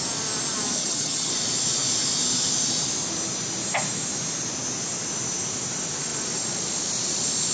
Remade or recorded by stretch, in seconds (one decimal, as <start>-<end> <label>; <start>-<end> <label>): 0.0-0.8 recorded; 0.8-1.3 remade; 1.3-7.5 recorded